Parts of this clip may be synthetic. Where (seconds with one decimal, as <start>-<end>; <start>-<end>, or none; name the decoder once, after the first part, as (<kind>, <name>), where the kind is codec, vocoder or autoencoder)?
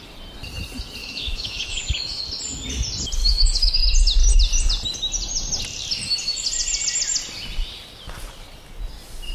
1.0-2.2 (autoencoder, DAC-VAE); 3.2-3.8